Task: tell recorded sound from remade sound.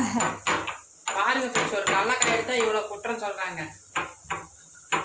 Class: recorded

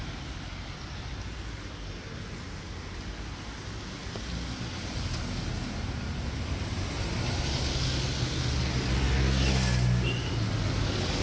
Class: recorded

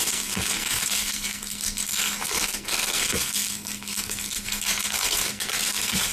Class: remade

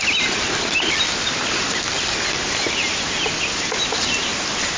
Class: recorded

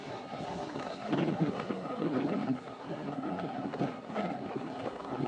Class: remade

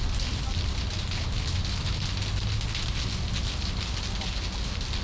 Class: recorded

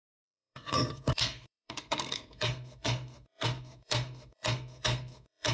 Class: remade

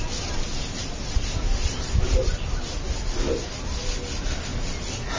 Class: recorded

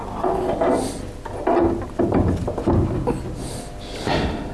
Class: recorded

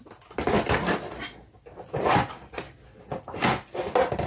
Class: recorded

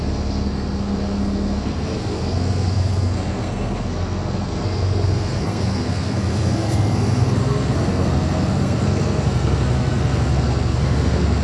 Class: remade